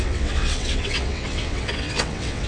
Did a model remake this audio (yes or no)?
yes